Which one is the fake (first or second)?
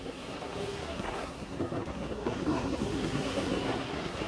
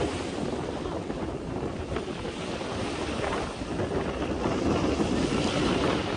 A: first